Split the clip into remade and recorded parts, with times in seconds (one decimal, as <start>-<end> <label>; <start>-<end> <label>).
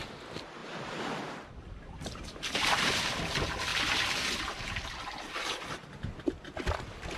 0.0-0.6 recorded; 0.6-2.9 remade; 2.9-7.2 recorded